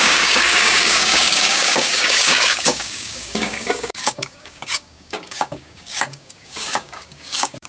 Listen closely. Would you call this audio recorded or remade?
remade